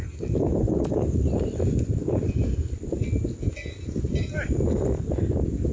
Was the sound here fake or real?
real